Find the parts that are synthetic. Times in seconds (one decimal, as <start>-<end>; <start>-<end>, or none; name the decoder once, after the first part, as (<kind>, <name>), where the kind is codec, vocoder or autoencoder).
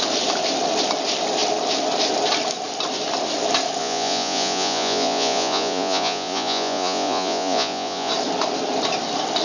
3.8-8.1 (vocoder, Vocos)